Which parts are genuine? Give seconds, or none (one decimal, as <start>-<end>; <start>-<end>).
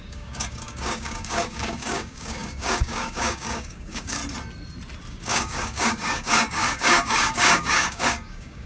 4.2-5.1